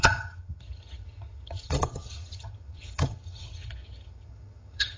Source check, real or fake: fake